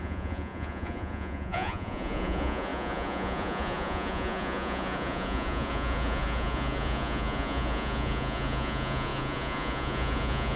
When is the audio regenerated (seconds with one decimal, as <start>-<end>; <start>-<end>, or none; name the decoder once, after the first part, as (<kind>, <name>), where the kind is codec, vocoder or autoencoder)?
0.0-10.6 (vocoder, Vocos)